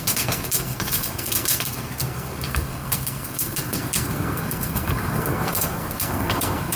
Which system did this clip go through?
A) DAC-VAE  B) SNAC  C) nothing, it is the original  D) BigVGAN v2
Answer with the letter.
B